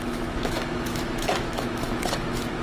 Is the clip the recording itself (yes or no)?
no